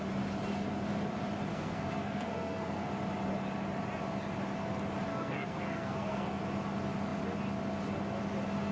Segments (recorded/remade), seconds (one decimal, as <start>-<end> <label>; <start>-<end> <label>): 0.0-1.5 recorded; 1.5-2.9 remade; 2.9-5.1 recorded; 5.1-6.4 remade; 6.4-8.7 recorded